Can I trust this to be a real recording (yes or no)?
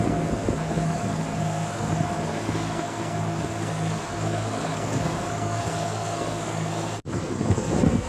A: no